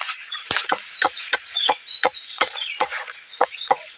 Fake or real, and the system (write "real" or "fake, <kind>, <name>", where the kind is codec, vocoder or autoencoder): fake, vocoder, Vocos